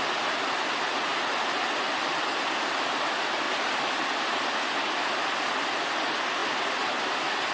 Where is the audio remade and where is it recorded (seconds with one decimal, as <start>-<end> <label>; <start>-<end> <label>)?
0.0-7.5 recorded